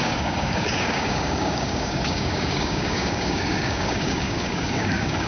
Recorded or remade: remade